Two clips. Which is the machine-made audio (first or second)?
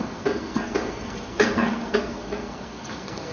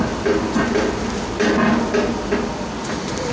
first